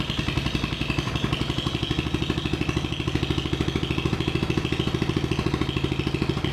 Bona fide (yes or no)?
yes